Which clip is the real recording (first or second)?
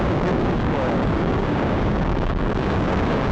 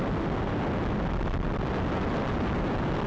second